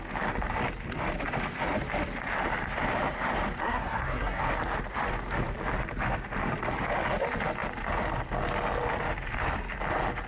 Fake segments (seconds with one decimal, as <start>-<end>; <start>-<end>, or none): 3.6-4.4